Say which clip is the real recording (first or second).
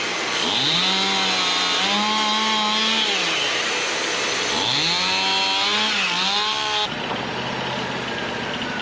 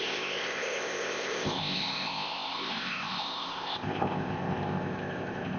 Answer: first